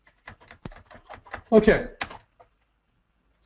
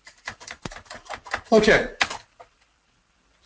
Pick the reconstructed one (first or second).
second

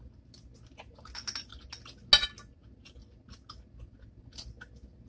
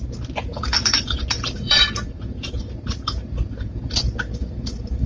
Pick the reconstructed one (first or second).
second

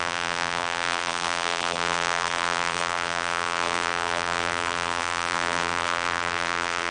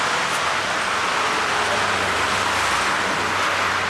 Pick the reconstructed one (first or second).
first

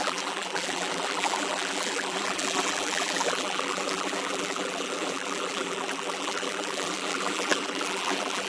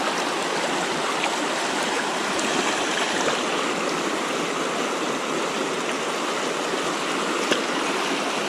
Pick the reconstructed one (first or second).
first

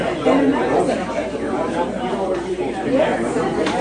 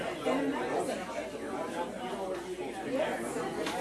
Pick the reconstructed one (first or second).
first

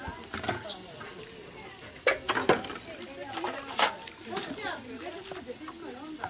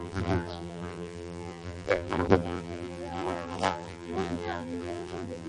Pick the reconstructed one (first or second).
second